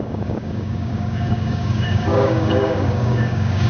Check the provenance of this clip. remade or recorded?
remade